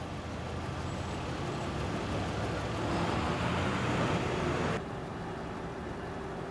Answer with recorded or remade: recorded